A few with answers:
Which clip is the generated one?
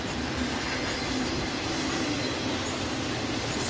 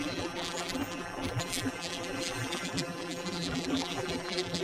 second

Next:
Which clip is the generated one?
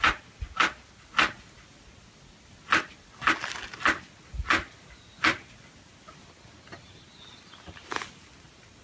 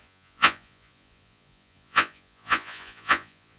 second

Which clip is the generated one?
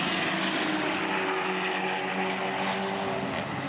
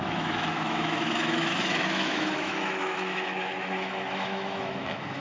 second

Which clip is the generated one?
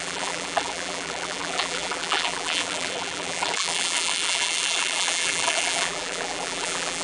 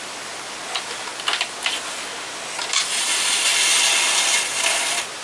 first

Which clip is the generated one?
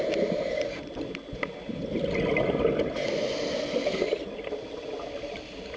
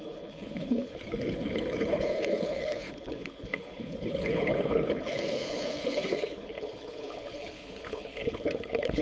second